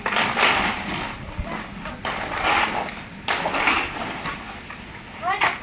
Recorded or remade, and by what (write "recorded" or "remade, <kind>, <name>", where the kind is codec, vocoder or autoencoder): recorded